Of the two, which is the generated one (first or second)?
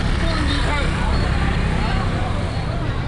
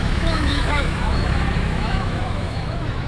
second